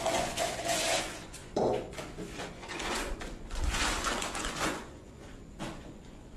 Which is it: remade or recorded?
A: remade